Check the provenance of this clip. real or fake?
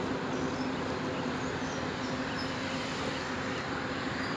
real